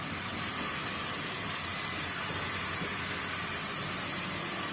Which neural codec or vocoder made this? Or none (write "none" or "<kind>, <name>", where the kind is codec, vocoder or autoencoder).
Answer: none